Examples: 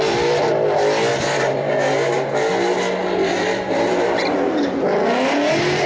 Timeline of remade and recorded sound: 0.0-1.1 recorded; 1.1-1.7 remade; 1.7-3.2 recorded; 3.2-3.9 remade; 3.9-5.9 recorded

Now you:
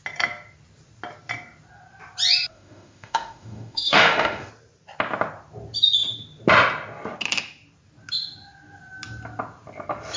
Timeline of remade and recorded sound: 0.0-2.5 recorded; 2.5-4.5 remade; 4.5-10.2 recorded

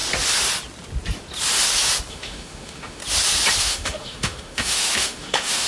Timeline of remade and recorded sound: 0.0-2.1 recorded; 2.1-3.0 remade; 3.0-3.6 recorded; 3.6-5.7 remade

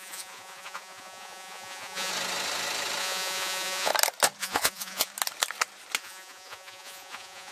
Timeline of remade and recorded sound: 0.0-2.1 remade; 2.1-3.0 recorded; 3.0-3.9 remade; 3.9-4.4 recorded; 4.4-5.1 remade; 5.1-6.0 recorded; 6.0-7.5 remade

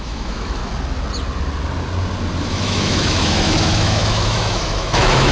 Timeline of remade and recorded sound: 0.0-0.6 remade; 0.6-2.4 recorded; 2.4-5.3 remade

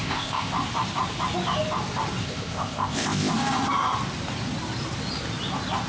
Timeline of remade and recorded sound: 0.0-0.5 remade; 0.5-2.2 recorded; 2.2-3.3 remade; 3.3-5.9 recorded

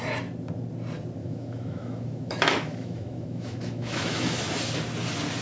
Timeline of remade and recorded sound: 0.0-1.2 recorded; 1.2-4.4 remade; 4.4-5.4 recorded

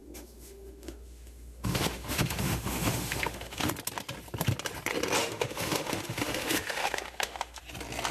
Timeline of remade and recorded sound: 0.0-3.7 remade; 3.7-5.2 recorded; 5.2-7.6 remade; 7.6-8.1 recorded